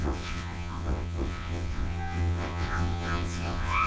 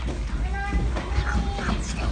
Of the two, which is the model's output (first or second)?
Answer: first